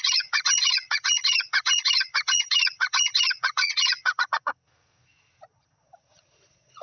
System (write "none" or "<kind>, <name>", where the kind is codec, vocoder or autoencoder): vocoder, Vocos